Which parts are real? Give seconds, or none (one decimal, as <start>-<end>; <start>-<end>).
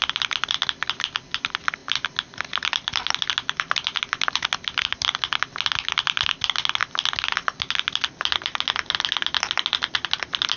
0.0-10.6